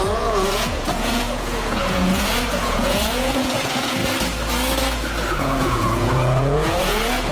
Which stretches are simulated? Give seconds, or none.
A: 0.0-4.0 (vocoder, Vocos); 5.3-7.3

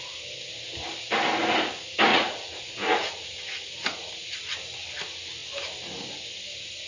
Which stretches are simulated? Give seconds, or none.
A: 2.1-4.1 (vocoder, Vocos)

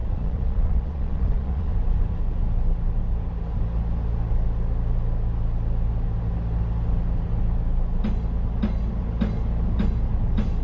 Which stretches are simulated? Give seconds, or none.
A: 0.0-1.7 (vocoder, Vocos)